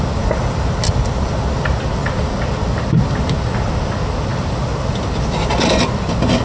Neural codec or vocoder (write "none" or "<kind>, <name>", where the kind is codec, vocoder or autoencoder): none